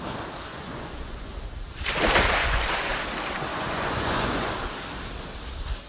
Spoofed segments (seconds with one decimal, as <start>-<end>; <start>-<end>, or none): 0.5-1.3; 2.4-2.9; 3.5-4.5